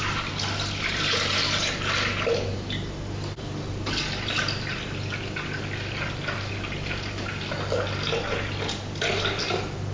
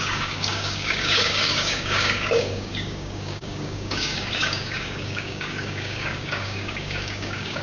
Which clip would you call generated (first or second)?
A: second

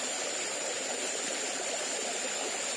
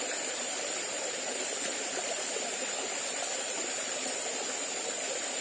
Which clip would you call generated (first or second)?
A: second